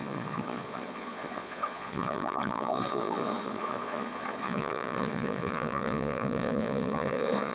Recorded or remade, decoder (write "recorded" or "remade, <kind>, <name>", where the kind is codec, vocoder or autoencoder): remade, vocoder, Vocos